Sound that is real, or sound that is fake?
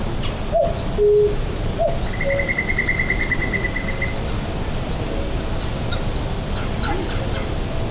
real